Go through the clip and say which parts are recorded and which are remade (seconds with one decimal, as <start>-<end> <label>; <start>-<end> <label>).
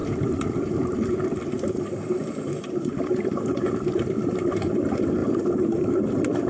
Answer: 0.0-3.6 remade; 3.6-5.2 recorded; 5.2-6.1 remade; 6.1-6.5 recorded